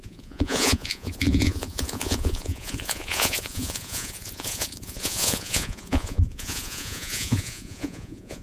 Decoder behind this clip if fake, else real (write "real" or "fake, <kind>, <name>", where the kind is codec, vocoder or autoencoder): fake, vocoder, Vocos